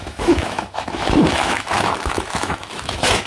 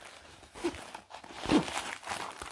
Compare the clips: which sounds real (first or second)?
second